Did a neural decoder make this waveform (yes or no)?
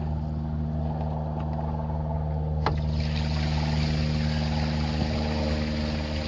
no